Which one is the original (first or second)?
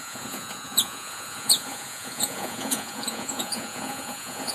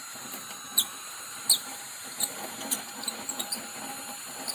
second